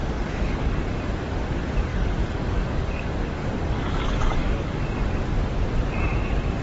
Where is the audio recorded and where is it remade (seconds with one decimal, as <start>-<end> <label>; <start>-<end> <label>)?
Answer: 0.0-0.8 remade; 0.8-1.9 recorded; 1.9-4.7 remade; 4.7-6.6 recorded